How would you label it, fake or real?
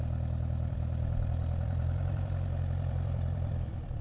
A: fake